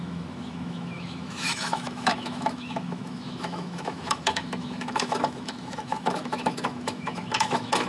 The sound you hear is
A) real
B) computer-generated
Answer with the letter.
B